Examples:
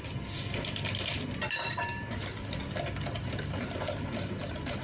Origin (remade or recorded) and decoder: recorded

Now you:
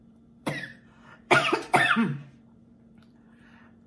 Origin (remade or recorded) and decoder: remade, vocoder, BigVGAN v2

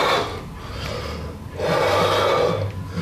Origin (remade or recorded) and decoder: recorded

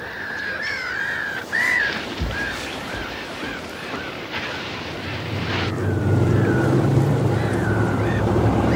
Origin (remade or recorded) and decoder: remade, vocoder, BigVGAN v2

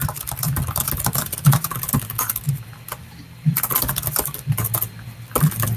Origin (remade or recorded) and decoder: recorded